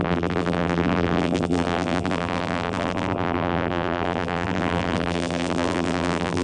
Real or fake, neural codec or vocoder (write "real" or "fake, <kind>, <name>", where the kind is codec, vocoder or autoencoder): fake, vocoder, BigVGAN v2